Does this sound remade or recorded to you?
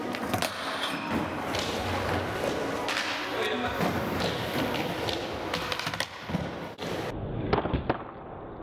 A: recorded